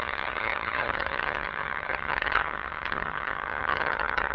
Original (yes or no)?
no